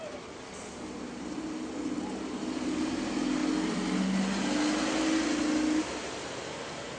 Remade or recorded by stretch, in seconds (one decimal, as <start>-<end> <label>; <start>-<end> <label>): 0.0-7.0 recorded